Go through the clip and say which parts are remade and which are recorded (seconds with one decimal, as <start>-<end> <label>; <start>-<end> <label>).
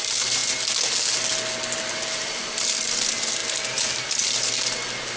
0.0-0.4 remade; 0.4-1.8 recorded; 1.8-3.4 remade; 3.4-5.2 recorded